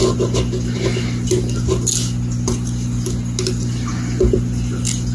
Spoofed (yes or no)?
no